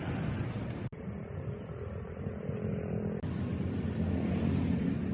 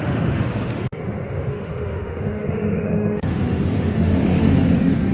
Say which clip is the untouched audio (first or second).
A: first